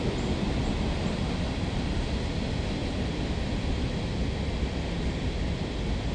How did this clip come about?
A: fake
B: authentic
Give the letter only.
B